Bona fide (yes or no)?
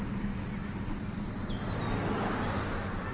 yes